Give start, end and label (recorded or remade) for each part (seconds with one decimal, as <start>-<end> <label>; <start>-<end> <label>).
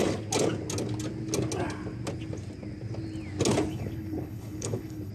0.0-3.7 recorded; 3.7-5.1 remade